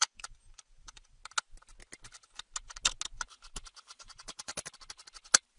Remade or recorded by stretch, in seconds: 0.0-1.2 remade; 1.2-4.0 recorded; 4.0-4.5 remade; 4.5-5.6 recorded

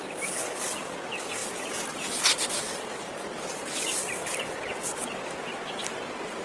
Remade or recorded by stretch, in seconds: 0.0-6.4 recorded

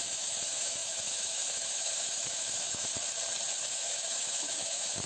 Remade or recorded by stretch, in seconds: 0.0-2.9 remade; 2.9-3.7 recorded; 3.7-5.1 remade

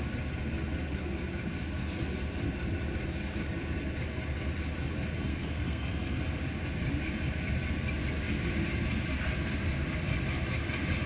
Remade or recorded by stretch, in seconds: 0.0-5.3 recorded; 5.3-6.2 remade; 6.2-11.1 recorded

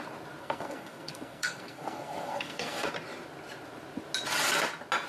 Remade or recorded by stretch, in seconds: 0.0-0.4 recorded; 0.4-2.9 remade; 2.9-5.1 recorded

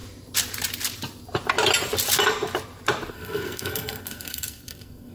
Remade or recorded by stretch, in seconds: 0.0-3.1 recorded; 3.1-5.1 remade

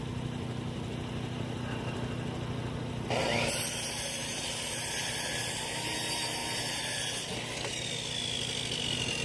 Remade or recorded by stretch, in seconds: 0.0-9.2 recorded